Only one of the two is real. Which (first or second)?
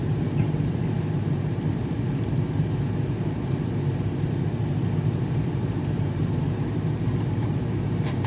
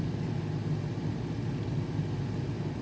second